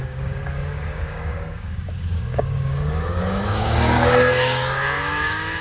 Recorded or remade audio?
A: remade